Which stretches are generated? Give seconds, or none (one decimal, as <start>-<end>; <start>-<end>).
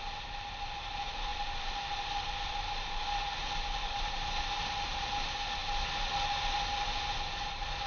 none